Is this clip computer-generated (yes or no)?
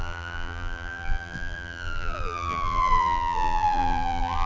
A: yes